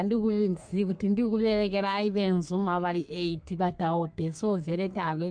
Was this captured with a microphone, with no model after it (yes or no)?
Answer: no